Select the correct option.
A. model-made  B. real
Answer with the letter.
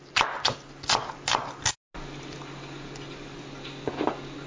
B